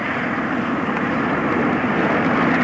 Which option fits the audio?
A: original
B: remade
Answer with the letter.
A